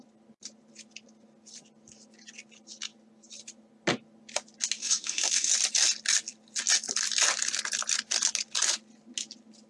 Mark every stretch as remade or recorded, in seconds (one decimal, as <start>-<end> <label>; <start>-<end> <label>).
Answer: 0.0-4.8 recorded; 4.8-5.5 remade; 5.5-9.7 recorded